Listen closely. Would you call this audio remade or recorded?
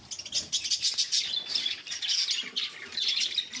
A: recorded